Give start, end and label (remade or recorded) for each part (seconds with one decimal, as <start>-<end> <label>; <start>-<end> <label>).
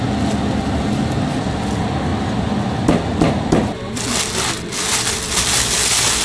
0.0-6.2 recorded